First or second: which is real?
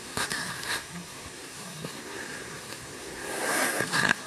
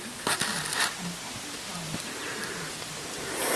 second